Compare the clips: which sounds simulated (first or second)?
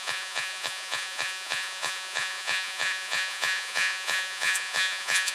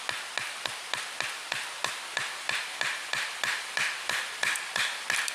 first